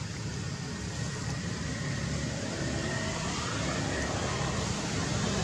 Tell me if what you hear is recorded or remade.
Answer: recorded